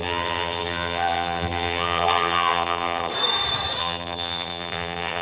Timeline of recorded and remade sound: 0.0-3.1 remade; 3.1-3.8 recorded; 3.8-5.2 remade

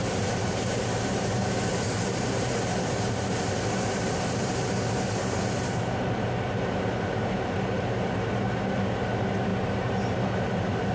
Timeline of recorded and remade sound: 0.0-10.9 remade